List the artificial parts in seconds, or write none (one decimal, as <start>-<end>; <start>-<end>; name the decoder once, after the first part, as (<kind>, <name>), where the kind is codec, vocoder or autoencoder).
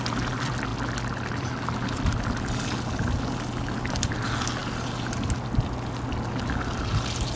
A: none